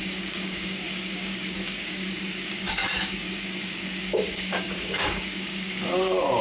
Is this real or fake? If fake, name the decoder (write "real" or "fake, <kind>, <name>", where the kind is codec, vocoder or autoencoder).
fake, codec, DAC